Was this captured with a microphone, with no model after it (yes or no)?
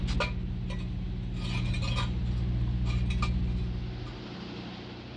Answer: yes